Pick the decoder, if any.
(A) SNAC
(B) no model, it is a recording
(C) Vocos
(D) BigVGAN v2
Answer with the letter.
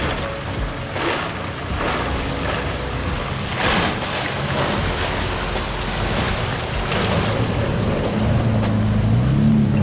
B